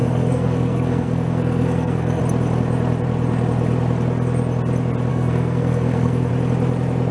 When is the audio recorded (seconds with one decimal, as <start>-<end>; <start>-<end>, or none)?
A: 2.2-5.1; 6.3-7.1